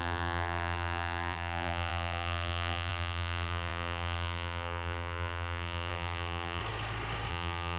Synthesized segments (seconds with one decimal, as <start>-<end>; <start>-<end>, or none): 0.0-6.6; 7.3-7.8